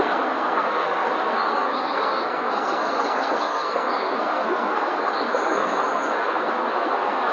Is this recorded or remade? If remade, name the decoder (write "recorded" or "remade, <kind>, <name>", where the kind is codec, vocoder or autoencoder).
remade, codec, SNAC